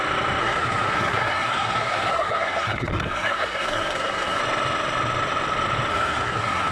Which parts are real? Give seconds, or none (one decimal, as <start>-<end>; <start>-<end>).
0.0-0.4; 4.4-5.9